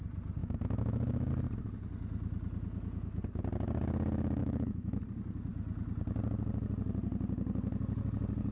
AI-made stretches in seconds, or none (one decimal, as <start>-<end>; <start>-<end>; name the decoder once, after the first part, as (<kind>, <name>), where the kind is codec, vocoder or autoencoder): 0.4-1.3 (autoencoder, DAC-VAE); 4.4-5.0